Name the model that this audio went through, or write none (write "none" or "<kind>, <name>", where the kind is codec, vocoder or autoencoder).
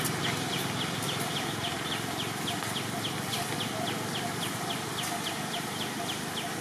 none